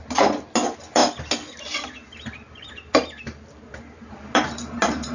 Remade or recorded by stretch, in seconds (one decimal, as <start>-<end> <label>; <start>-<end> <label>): 0.0-5.1 recorded